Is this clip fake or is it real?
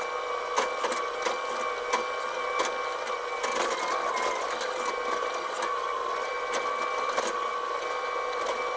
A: real